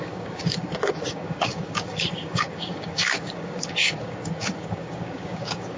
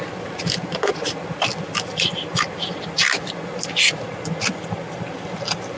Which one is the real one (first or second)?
second